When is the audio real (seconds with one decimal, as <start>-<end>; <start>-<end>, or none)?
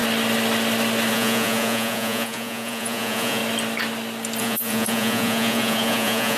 0.0-1.1; 3.4-4.4